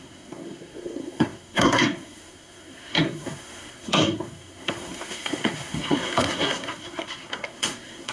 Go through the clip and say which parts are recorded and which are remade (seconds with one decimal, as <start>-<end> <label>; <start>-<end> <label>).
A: 0.0-8.1 remade